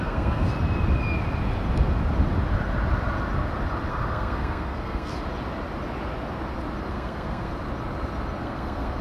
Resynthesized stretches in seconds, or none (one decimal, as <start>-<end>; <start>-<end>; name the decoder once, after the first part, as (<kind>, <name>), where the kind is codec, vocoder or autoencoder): 0.0-0.5 (codec, SNAC); 3.9-5.1; 6.9-7.5; 8.4-9.0